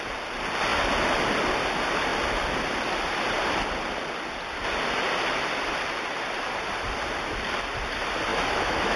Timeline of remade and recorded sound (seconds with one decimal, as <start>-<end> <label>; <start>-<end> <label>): 0.0-8.3 recorded; 8.3-9.0 remade